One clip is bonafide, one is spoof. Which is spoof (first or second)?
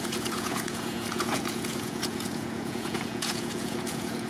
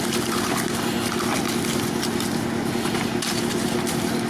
first